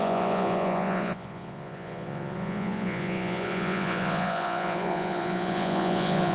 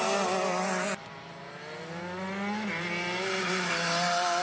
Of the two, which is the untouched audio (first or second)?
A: second